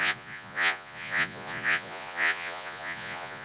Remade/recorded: remade